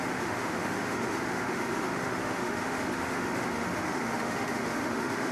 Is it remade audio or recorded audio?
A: remade